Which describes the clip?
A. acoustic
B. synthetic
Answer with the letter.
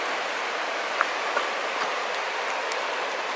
A